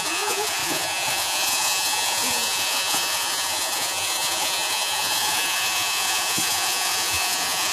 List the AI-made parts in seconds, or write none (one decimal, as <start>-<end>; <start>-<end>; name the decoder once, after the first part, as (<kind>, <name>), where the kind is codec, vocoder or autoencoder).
0.0-7.7 (vocoder, Vocos)